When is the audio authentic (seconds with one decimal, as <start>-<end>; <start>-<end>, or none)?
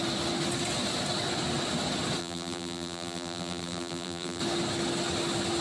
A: 0.0-2.2; 4.4-5.6